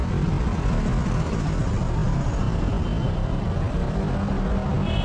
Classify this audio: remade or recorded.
recorded